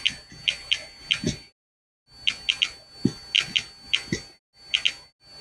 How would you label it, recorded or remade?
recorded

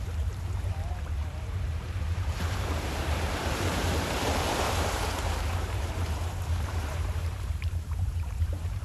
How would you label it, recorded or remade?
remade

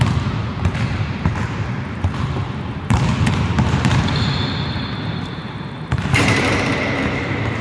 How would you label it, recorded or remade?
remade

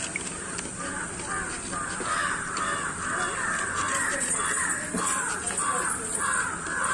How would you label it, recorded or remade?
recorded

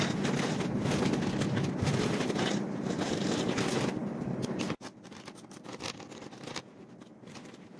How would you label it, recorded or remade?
recorded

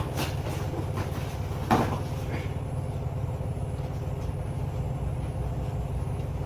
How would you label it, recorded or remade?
recorded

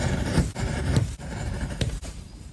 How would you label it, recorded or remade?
remade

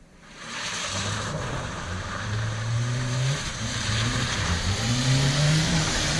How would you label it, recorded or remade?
remade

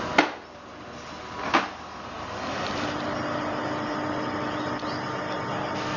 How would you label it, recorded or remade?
recorded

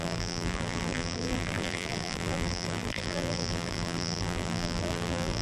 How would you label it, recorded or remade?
remade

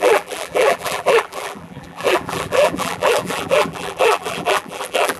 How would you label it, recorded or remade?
remade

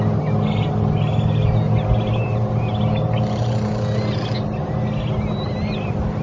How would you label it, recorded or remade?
recorded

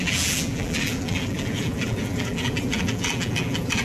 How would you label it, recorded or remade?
remade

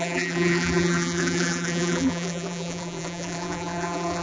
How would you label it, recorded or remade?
remade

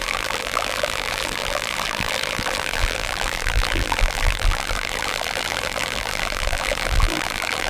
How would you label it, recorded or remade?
remade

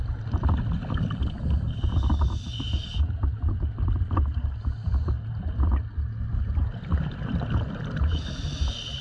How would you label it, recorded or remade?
recorded